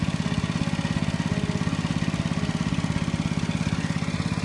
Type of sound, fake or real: real